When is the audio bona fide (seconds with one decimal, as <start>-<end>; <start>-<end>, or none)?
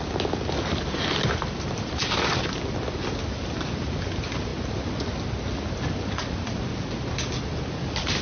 0.0-8.2